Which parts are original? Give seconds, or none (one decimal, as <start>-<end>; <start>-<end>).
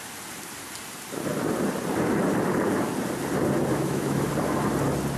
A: 0.0-3.7; 4.3-5.2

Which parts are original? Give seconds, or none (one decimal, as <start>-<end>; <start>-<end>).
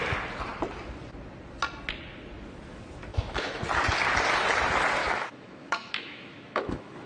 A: 0.0-3.1; 3.6-5.0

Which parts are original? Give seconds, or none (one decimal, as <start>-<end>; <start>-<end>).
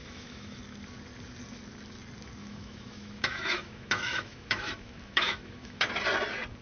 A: 0.6-2.4; 5.9-6.6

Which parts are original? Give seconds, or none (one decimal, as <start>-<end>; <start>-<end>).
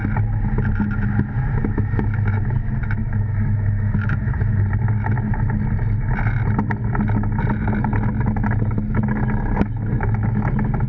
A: 0.0-1.6; 4.6-10.9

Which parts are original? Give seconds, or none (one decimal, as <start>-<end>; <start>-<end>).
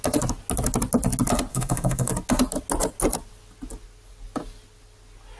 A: 0.0-1.5; 2.1-5.4